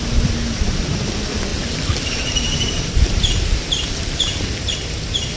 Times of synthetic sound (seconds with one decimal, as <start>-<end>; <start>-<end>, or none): 1.5-4.7